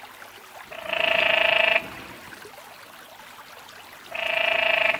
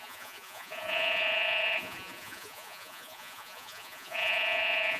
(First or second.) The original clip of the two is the first